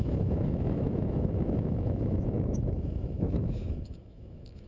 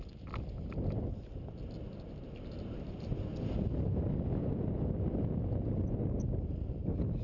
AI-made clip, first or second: first